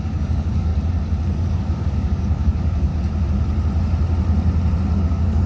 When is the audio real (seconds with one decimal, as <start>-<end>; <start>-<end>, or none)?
0.7-1.5; 2.9-5.0